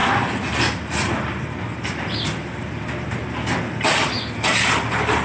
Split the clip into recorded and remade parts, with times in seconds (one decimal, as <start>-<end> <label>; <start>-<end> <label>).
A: 0.0-5.2 recorded